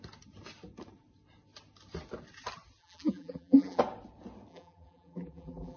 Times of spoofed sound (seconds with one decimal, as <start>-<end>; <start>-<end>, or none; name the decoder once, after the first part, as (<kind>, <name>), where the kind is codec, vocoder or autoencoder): 2.8-3.8 (vocoder, BigVGAN v2); 4.5-5.8